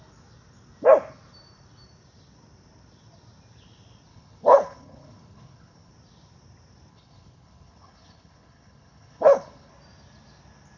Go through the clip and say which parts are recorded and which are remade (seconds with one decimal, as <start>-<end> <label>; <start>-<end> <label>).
0.0-4.1 recorded; 4.1-5.9 remade; 5.9-6.9 recorded; 6.9-9.7 remade; 9.7-10.8 recorded